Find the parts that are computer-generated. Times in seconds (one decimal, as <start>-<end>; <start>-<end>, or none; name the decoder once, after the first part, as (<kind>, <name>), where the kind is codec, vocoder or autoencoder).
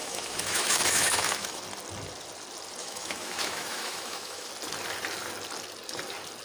0.0-1.6 (autoencoder, DAC-VAE); 2.8-4.5